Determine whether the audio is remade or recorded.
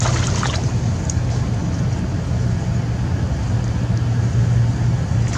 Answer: recorded